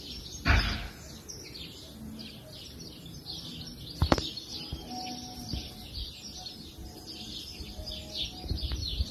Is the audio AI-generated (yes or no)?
no